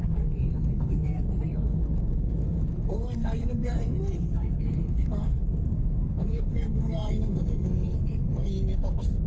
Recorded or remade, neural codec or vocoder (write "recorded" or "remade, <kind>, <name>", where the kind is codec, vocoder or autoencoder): remade, codec, SNAC